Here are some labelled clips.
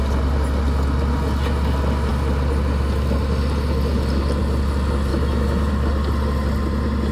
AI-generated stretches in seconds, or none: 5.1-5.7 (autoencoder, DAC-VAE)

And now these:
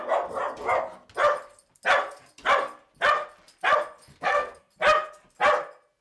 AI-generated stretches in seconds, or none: 4.1-4.7 (codec, SNAC)

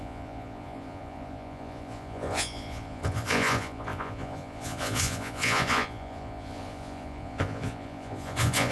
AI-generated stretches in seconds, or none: 0.0-8.7 (vocoder, Vocos)

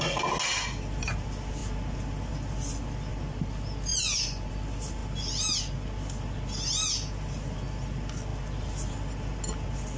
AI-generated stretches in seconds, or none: 3.9-4.5 (vocoder, Vocos)